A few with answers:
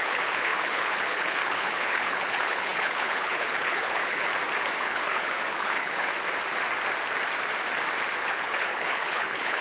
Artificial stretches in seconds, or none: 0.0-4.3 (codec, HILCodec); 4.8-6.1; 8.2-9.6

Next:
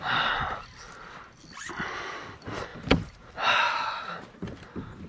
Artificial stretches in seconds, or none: none

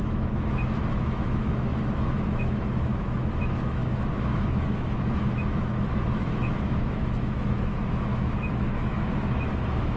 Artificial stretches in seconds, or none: 0.0-10.0 (autoencoder, DAC-VAE)

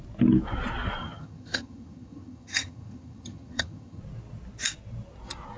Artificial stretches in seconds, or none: 1.0-4.0 (vocoder, HiFi-GAN)

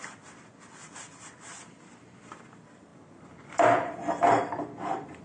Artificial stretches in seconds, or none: none

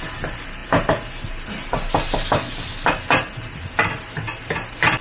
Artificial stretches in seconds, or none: none

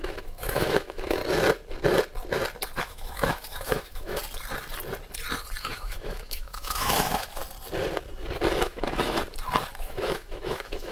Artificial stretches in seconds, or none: 0.0-1.2 (autoencoder, DAC-VAE); 2.8-4.2; 5.6-7.4; 8.6-9.2; 9.8-10.9

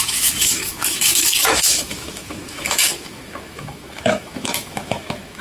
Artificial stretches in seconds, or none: 0.0-5.4 (autoencoder, DAC-VAE)